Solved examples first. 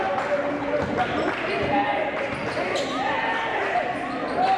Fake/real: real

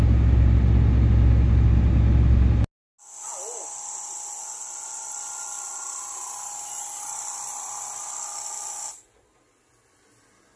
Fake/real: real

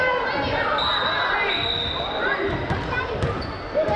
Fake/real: real